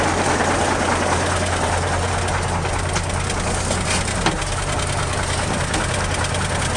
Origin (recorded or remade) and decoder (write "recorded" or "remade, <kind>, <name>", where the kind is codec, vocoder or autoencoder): recorded